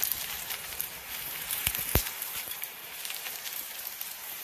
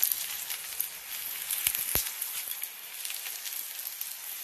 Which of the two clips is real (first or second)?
second